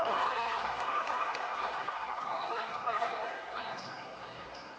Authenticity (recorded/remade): remade